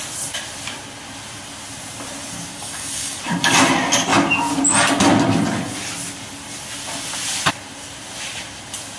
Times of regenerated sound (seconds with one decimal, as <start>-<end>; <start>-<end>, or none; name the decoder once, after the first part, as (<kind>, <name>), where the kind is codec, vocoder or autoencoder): 2.5-3.2 (codec, DAC)